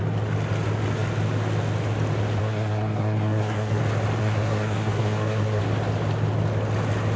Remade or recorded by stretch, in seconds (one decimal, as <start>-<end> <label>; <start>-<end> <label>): 0.0-2.4 recorded; 2.4-3.8 remade; 3.8-4.2 recorded; 4.2-5.6 remade; 5.6-7.2 recorded